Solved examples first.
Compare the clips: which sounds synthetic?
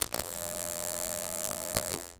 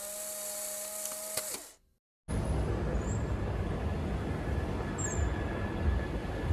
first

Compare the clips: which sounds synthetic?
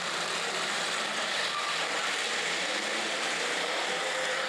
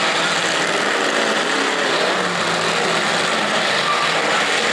first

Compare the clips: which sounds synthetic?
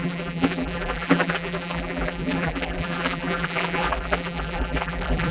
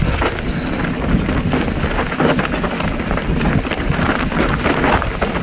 first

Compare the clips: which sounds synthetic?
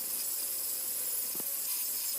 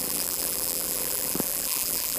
second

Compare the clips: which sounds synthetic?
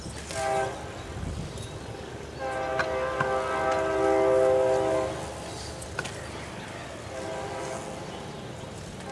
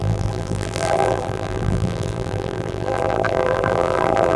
second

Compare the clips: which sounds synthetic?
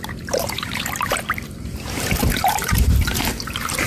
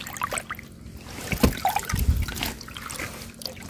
first